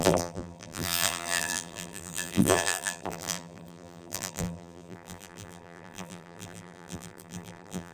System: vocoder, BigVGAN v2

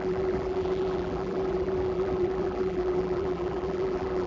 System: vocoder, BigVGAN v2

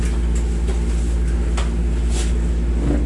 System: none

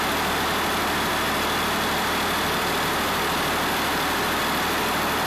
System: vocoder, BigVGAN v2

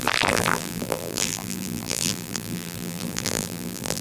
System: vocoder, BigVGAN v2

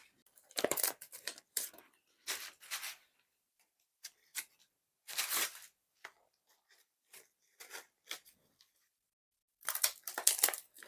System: vocoder, BigVGAN v2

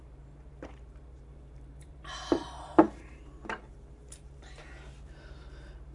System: vocoder, BigVGAN v2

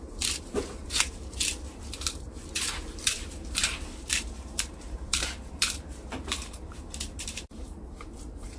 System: vocoder, BigVGAN v2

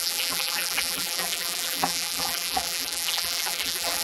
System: vocoder, BigVGAN v2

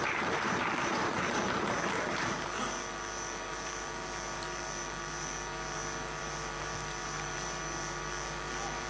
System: vocoder, BigVGAN v2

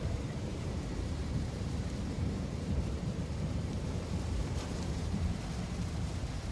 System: vocoder, BigVGAN v2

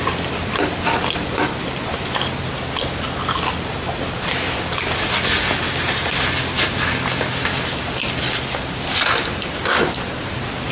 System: none